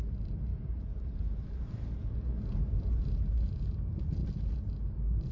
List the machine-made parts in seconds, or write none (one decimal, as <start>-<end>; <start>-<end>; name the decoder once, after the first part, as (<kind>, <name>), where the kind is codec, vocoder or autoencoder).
0.5-3.7 (vocoder, BigVGAN v2)